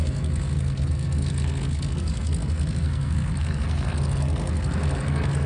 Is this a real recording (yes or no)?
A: no